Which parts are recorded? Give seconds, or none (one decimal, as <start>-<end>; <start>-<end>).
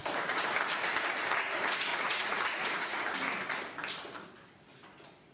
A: 0.0-1.9; 3.0-5.3